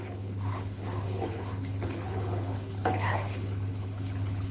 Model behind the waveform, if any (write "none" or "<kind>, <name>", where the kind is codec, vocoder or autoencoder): codec, HILCodec